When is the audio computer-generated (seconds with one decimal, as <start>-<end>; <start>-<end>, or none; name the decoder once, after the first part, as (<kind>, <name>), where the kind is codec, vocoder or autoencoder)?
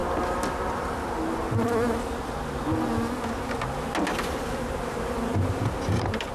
none